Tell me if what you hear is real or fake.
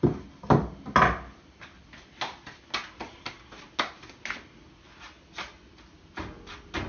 real